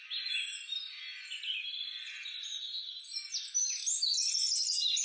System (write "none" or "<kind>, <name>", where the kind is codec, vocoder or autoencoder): none